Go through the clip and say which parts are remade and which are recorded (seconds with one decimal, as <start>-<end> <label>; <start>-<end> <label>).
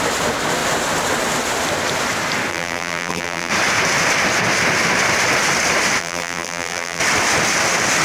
0.0-2.5 recorded; 2.5-3.5 remade; 3.5-6.0 recorded; 6.0-7.0 remade; 7.0-8.0 recorded